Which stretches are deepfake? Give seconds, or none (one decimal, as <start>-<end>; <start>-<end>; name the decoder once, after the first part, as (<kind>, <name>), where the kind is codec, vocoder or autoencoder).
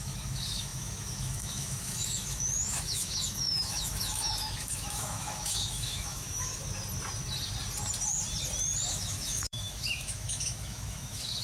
0.0-6.5 (autoencoder, DAC-VAE); 8.9-11.4